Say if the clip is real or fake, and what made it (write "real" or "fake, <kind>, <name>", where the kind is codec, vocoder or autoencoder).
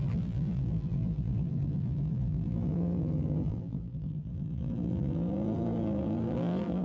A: fake, vocoder, BigVGAN v2